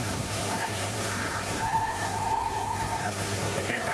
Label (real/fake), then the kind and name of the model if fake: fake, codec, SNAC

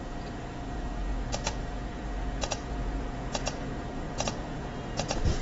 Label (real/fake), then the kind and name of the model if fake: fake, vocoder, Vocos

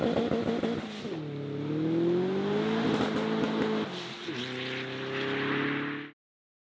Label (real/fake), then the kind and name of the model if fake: real